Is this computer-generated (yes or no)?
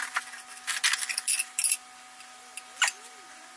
no